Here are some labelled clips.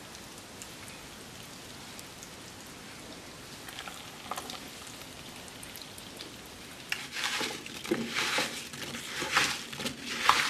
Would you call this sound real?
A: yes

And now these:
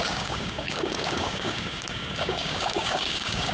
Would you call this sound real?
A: no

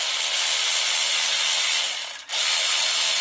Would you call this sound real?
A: yes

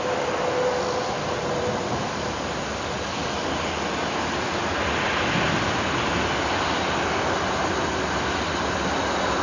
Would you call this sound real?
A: yes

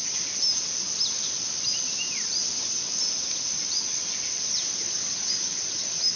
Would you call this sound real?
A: yes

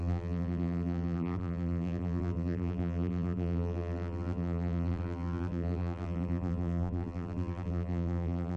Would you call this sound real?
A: no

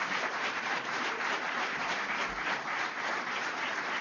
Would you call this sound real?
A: no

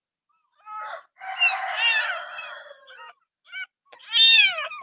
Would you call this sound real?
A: yes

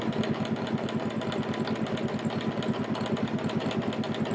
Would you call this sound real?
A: yes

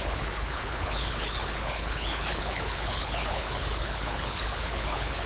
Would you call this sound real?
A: no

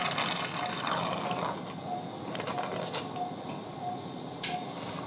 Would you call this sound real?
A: yes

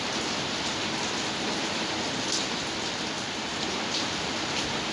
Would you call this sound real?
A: yes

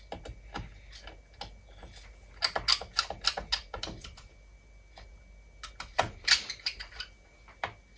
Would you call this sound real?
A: yes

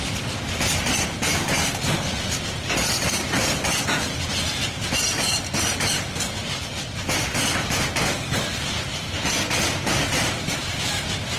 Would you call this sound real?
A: yes